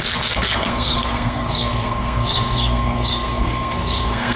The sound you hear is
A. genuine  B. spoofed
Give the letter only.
B